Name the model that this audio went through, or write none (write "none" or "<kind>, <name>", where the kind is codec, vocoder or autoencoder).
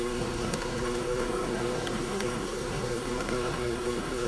codec, SNAC